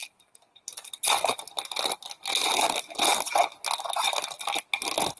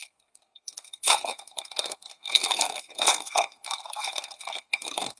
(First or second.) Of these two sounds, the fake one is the second